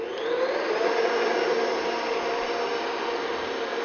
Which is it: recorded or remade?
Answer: recorded